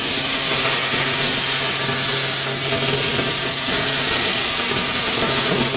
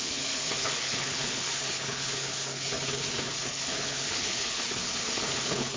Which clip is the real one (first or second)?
first